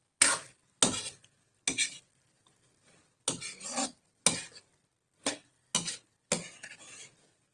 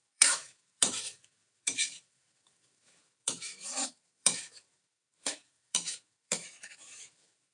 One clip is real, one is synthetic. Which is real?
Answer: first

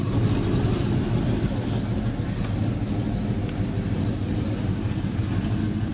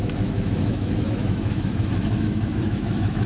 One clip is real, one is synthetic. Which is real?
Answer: first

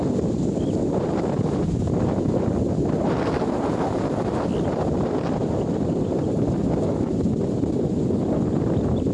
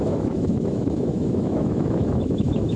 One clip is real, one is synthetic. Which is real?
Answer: first